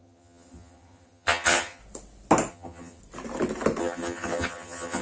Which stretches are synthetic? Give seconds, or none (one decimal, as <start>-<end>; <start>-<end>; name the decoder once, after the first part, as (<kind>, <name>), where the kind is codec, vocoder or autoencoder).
0.0-1.8 (vocoder, HiFi-GAN); 2.5-3.0; 3.8-5.0